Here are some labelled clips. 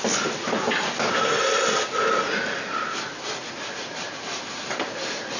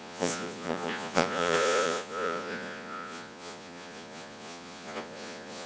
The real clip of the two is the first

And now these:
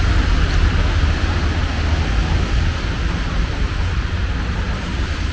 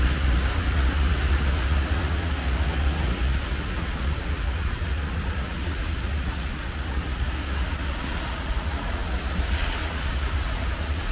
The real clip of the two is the first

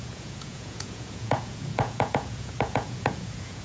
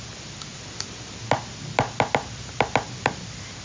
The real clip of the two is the second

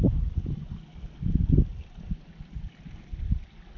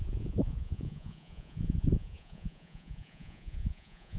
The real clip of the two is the first